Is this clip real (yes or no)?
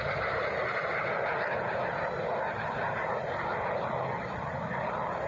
yes